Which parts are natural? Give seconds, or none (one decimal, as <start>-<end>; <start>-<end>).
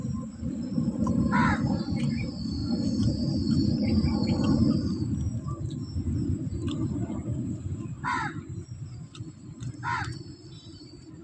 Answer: 2.6-3.5